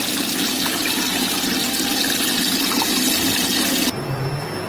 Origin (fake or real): real